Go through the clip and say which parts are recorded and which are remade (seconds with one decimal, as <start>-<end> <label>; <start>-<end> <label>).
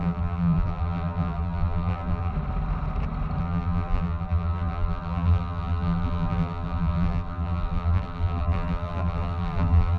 0.0-2.3 remade; 2.3-3.4 recorded; 3.4-10.0 remade